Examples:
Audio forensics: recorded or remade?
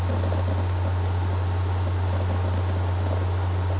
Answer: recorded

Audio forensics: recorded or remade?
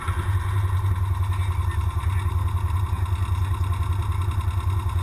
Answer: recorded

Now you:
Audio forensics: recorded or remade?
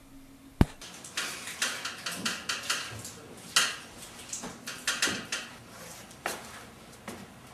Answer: recorded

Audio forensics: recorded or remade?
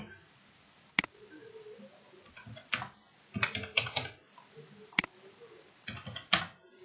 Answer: recorded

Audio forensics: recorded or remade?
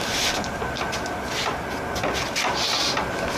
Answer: recorded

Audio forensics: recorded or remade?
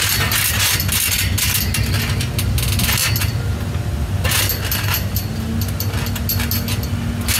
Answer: recorded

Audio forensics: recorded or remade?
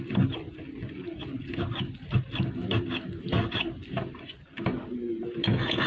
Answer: recorded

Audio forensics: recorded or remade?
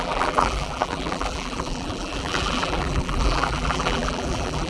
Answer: remade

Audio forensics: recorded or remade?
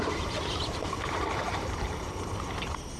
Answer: remade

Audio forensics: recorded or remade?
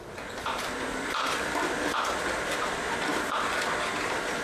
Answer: remade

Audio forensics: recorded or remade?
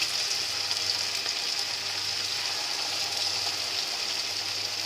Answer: recorded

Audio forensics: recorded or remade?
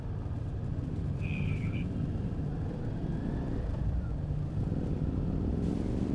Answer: remade